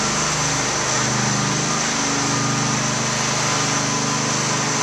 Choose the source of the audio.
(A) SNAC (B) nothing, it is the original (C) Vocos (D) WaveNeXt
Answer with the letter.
B